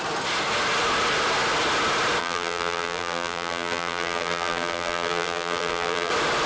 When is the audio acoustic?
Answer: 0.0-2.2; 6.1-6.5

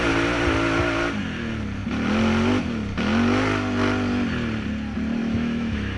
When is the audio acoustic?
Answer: 0.0-5.2

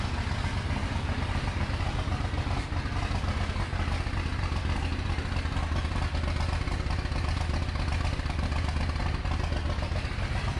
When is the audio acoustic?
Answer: 0.0-10.6